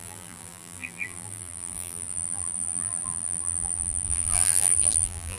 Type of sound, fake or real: fake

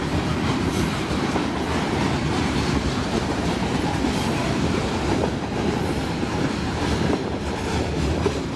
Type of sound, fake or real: fake